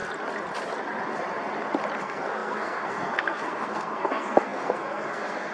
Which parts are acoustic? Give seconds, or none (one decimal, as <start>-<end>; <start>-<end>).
0.0-2.0